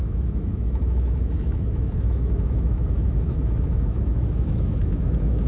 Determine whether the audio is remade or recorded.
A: remade